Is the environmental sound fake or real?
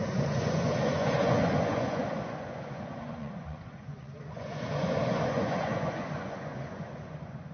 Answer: fake